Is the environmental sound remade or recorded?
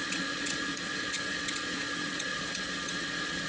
remade